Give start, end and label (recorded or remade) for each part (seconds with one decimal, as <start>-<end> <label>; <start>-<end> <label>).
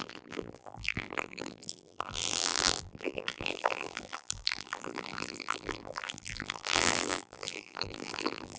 0.0-8.6 remade